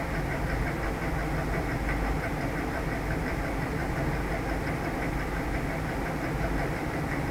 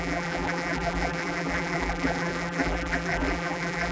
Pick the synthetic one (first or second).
second